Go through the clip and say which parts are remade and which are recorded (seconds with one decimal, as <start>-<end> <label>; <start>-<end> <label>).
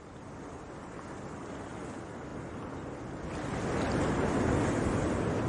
0.0-5.5 recorded